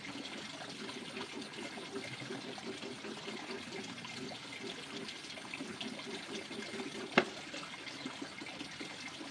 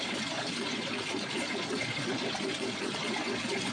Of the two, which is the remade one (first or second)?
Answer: second